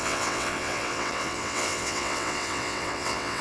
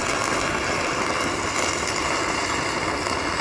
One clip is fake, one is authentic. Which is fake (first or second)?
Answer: first